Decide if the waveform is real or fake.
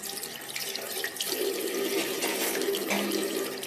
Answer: real